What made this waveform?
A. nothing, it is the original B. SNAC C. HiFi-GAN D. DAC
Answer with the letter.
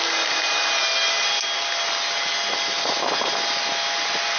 A